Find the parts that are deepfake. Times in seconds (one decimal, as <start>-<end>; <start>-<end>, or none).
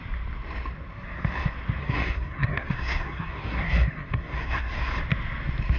1.8-4.9